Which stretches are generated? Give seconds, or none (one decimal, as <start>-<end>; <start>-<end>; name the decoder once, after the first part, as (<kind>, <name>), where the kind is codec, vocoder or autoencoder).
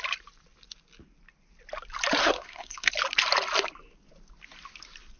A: 2.2-2.9 (codec, SNAC)